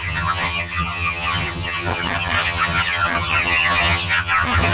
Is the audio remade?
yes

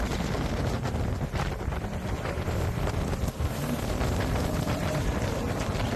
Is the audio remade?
no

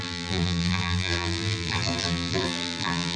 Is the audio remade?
yes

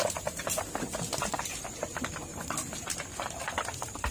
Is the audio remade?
no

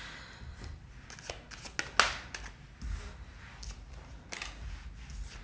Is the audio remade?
no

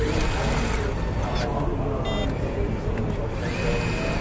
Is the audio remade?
no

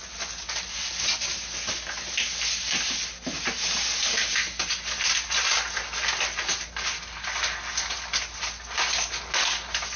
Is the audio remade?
no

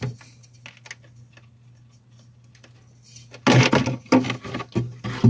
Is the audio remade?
no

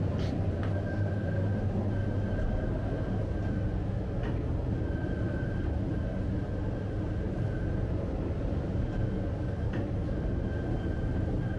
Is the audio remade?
no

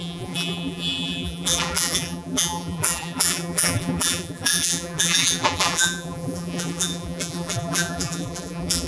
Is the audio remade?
yes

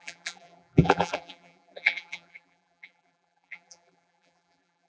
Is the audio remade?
yes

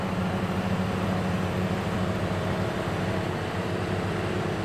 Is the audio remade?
yes